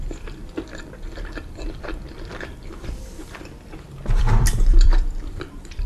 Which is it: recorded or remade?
remade